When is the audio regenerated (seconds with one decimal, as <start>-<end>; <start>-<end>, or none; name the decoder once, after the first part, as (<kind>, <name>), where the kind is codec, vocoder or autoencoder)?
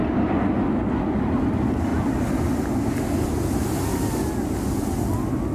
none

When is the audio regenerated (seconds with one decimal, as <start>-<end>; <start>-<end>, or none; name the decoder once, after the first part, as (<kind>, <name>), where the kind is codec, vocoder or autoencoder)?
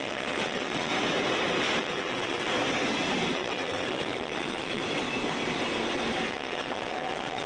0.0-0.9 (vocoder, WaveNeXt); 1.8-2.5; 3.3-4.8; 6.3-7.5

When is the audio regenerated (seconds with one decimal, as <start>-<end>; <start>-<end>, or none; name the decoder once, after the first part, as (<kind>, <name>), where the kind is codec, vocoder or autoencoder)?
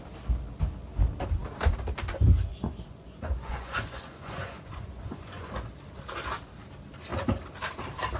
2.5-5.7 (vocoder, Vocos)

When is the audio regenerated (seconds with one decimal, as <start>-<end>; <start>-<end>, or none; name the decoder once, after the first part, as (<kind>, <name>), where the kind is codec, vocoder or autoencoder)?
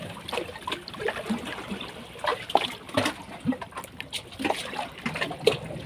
none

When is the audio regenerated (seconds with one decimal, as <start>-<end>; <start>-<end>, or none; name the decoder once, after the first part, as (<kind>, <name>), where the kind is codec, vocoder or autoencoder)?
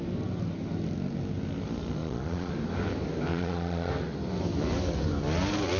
2.0-2.5 (vocoder, Vocos); 3.3-3.9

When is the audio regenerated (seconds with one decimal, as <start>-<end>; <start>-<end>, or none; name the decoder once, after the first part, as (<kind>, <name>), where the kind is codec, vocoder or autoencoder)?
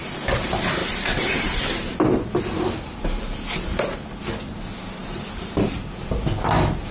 0.8-2.4 (vocoder, BigVGAN v2); 5.0-6.2